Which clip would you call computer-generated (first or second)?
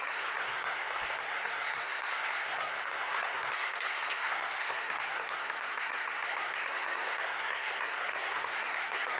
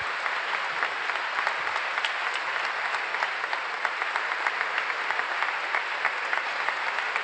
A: first